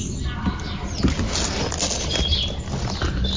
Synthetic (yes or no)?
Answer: no